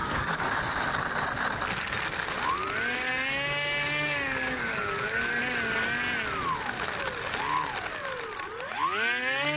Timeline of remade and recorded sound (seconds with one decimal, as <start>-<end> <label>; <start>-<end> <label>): 0.0-0.6 remade; 0.6-3.1 recorded; 3.1-5.4 remade; 5.4-9.6 recorded